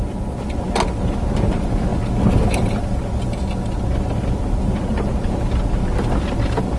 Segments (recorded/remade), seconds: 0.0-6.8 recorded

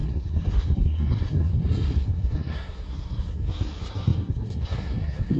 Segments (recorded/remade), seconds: 0.0-5.4 remade

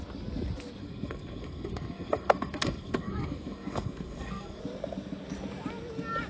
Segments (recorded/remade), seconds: 0.0-0.8 recorded; 0.8-4.6 remade; 4.6-6.3 recorded

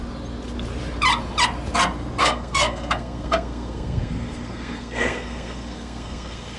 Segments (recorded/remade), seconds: 0.0-2.2 recorded; 2.2-6.6 remade

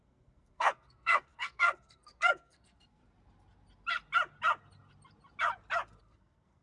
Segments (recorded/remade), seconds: 0.0-3.0 remade; 3.0-6.0 recorded; 6.0-6.6 remade